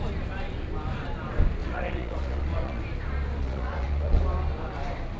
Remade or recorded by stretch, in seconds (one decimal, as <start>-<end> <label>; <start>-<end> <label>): 0.0-1.6 recorded; 1.6-2.8 remade; 2.8-3.4 recorded; 3.4-4.2 remade; 4.2-5.2 recorded